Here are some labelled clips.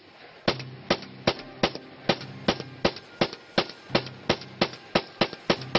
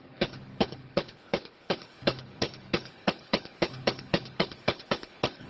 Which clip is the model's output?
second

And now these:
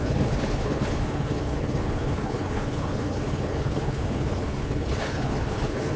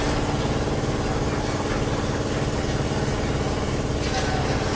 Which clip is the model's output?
first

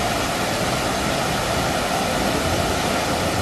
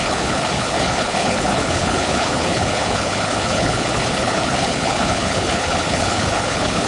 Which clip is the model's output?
second